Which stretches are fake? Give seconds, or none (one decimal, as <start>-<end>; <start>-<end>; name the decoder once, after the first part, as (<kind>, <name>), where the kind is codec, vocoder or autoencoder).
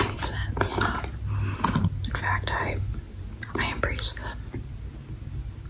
none